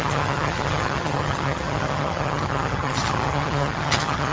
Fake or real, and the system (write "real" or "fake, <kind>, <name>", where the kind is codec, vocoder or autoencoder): fake, vocoder, HiFi-GAN